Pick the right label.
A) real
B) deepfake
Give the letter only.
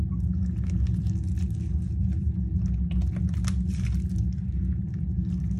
A